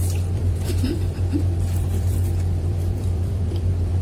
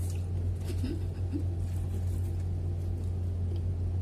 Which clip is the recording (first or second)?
second